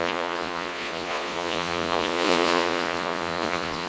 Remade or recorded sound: remade